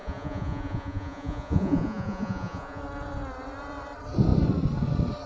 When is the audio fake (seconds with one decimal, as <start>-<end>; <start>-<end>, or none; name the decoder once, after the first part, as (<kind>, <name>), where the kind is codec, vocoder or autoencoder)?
0.0-2.8 (vocoder, Vocos)